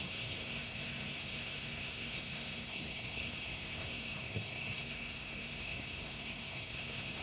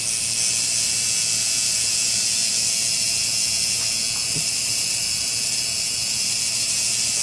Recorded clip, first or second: second